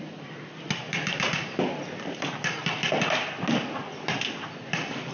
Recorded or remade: recorded